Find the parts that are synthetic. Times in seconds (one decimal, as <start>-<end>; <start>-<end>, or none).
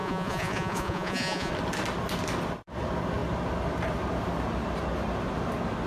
0.0-1.5